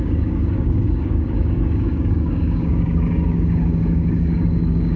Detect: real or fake fake